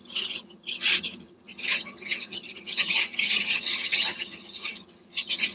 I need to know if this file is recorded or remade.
remade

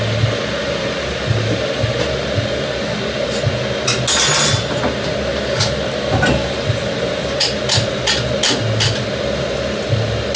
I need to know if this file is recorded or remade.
recorded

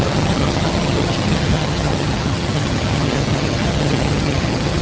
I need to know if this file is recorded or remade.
remade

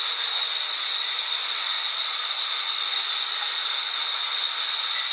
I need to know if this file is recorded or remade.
recorded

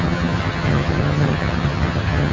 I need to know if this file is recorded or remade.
remade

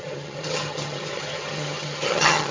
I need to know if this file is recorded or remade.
remade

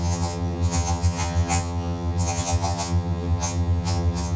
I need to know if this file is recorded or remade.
remade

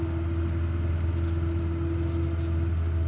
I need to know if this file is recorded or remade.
recorded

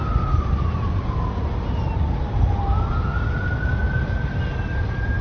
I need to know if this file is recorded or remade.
recorded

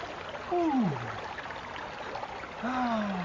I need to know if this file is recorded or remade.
recorded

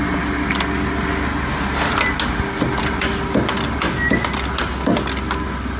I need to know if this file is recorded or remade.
recorded